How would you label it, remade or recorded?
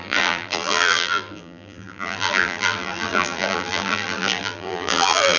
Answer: remade